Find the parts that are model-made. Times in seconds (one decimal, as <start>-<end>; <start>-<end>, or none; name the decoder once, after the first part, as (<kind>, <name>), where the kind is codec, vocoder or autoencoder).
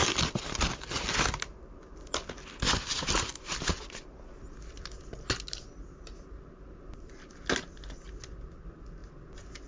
none